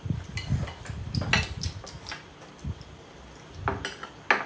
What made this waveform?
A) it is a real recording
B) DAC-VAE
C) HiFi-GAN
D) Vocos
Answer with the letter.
A